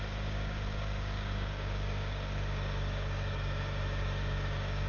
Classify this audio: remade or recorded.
remade